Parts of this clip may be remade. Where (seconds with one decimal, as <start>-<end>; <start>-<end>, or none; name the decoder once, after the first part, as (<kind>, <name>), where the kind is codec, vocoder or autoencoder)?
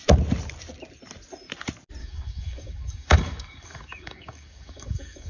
2.0-5.3 (codec, DAC)